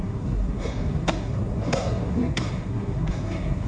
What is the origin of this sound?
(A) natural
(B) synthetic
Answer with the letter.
B